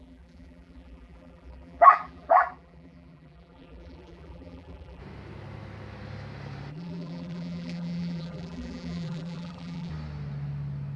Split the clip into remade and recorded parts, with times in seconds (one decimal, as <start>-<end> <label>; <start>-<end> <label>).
0.0-5.0 remade; 5.0-6.7 recorded; 6.7-9.9 remade; 9.9-11.0 recorded